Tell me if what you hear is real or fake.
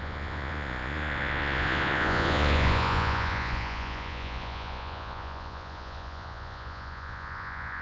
fake